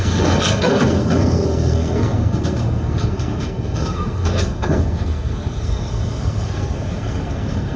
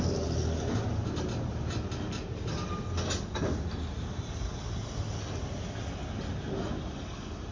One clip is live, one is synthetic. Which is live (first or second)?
second